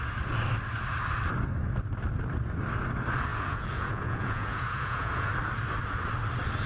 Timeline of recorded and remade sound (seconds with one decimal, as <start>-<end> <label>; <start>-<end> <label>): 0.0-3.3 recorded; 3.3-5.3 remade; 5.3-6.7 recorded